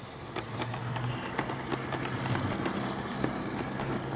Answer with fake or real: real